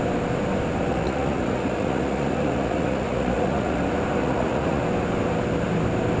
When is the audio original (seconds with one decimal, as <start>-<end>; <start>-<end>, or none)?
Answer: 0.0-0.9; 3.8-4.2; 4.8-6.2